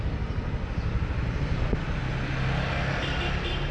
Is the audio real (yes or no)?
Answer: yes